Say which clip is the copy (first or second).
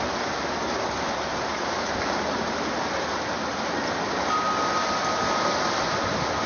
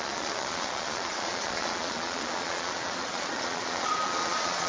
second